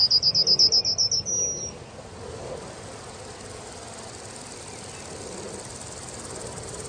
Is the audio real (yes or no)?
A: yes